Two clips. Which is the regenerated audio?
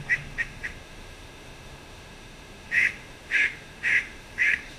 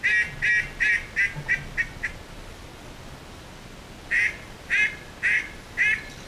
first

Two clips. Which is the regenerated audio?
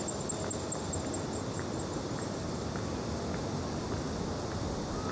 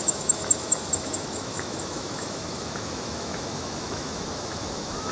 second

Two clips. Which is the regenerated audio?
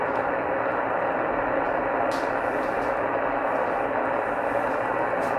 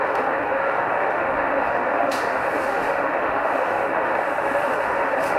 second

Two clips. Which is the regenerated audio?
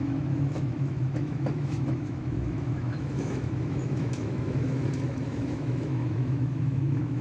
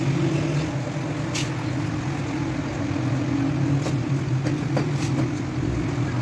first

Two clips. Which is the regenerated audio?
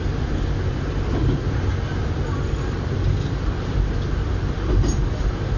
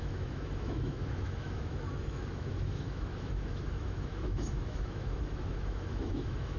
second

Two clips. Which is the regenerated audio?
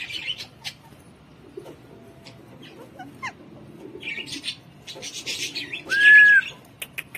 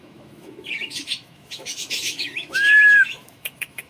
second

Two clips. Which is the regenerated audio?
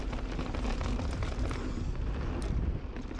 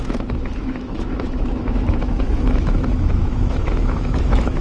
second